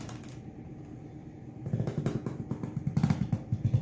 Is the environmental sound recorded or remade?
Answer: remade